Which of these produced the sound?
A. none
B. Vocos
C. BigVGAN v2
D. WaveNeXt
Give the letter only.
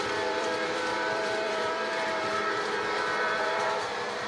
C